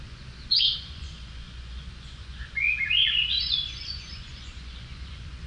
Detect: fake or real fake